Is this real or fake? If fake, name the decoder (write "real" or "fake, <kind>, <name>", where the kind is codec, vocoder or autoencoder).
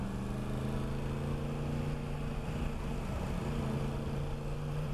real